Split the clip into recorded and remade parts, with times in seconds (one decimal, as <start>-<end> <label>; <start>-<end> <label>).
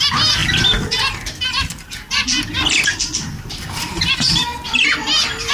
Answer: 0.0-0.4 remade; 0.4-3.7 recorded; 3.7-4.5 remade; 4.5-5.5 recorded